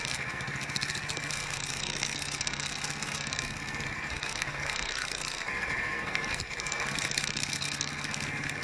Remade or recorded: remade